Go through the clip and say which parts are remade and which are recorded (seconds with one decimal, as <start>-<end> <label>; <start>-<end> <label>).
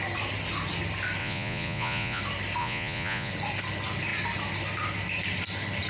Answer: 0.0-1.2 recorded; 1.2-2.2 remade; 2.2-2.6 recorded; 2.6-3.3 remade; 3.3-5.9 recorded